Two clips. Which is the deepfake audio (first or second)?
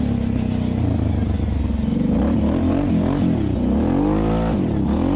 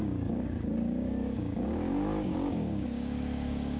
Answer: second